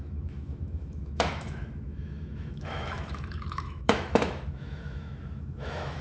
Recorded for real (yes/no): no